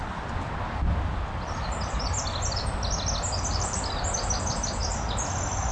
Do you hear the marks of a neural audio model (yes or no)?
no